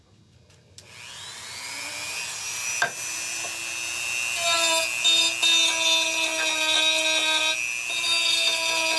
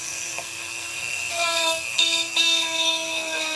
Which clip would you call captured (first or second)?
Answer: first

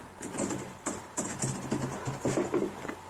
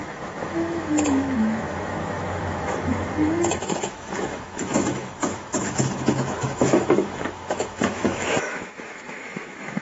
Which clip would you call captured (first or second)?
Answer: first